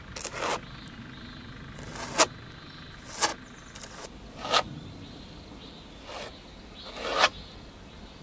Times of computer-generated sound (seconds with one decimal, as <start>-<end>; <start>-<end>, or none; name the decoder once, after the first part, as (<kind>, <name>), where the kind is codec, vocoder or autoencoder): none